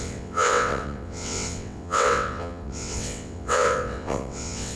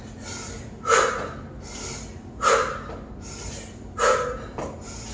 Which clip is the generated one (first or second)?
first